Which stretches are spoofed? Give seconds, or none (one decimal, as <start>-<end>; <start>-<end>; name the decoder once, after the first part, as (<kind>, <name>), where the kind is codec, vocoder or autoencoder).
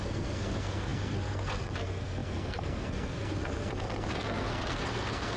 0.0-5.4 (codec, SNAC)